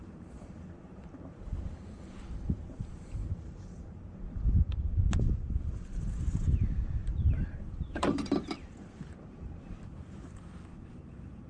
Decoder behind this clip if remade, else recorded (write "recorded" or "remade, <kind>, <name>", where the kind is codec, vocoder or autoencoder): remade, vocoder, BigVGAN v2